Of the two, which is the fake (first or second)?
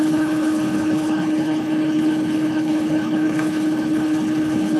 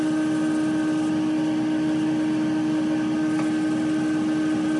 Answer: first